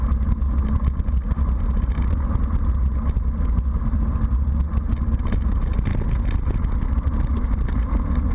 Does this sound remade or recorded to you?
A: recorded